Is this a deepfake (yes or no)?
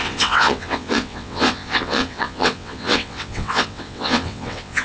yes